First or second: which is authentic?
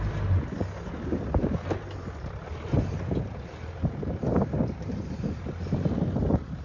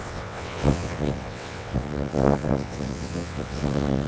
first